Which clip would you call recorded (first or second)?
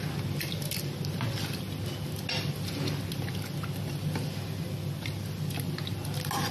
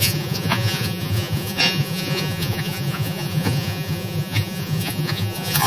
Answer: first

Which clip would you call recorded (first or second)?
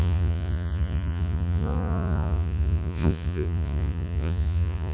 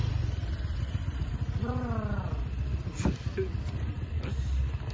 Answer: second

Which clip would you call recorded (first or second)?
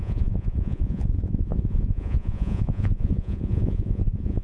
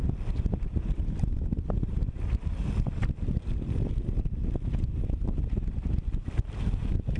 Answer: second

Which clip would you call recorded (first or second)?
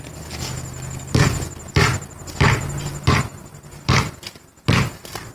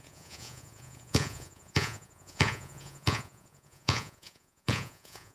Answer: first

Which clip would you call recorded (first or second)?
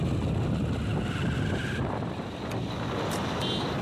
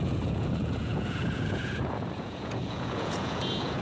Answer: first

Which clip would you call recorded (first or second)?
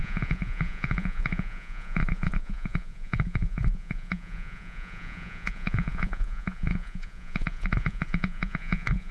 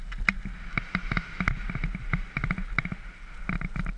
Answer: second